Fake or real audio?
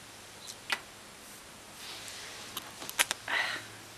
real